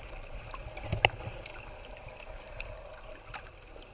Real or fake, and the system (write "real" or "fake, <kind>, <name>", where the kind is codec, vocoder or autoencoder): real